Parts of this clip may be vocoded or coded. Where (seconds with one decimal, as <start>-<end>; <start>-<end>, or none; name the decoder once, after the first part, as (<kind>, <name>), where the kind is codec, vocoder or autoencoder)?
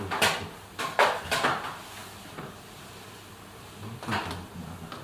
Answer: none